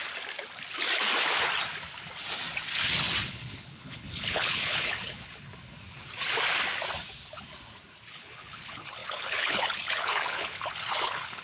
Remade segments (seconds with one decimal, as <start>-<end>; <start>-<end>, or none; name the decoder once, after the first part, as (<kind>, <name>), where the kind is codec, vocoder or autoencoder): 3.3-5.5 (codec, HILCodec); 8.1-11.4